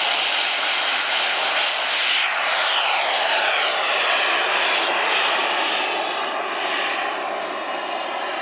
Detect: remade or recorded recorded